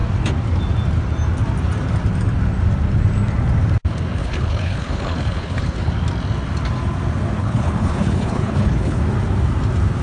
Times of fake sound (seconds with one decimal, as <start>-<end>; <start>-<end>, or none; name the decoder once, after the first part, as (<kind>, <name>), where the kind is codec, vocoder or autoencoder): 4.2-5.9 (codec, HILCodec); 7.4-9.0